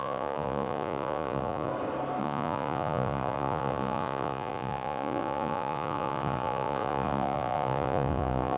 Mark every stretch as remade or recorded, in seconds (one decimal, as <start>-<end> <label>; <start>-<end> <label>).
0.0-1.7 remade; 1.7-2.2 recorded; 2.2-8.6 remade